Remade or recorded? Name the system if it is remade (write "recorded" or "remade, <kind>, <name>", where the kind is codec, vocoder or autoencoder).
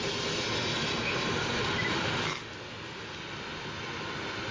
recorded